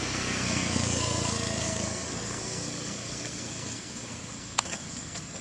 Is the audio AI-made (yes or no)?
yes